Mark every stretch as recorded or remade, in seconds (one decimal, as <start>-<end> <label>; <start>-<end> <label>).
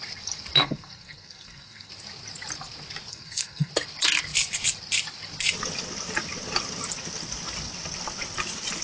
0.0-0.6 recorded; 0.6-1.9 remade; 1.9-3.1 recorded; 3.1-3.7 remade; 3.7-8.8 recorded